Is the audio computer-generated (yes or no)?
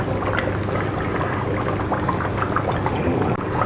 no